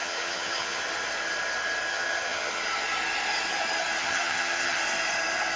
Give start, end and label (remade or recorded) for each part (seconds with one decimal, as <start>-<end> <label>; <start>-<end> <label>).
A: 0.0-0.8 remade; 0.8-1.9 recorded; 1.9-2.6 remade; 2.6-4.0 recorded; 4.0-4.8 remade; 4.8-5.6 recorded

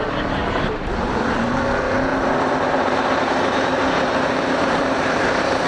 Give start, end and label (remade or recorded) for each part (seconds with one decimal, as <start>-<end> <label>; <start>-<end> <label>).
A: 0.0-0.4 recorded; 0.4-1.6 remade; 1.6-2.1 recorded; 2.1-5.7 remade

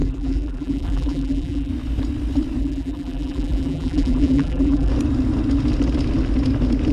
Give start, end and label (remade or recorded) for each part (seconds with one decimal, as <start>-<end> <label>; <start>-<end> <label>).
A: 0.0-1.7 remade; 1.7-2.6 recorded; 2.6-4.9 remade; 4.9-6.9 recorded